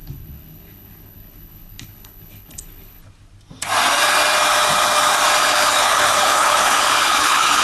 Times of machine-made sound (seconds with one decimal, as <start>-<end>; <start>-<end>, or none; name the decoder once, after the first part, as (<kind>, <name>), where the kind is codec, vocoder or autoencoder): 0.0-3.0 (codec, HILCodec); 5.4-7.6